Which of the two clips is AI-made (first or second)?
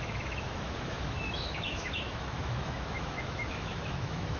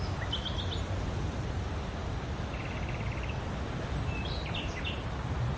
first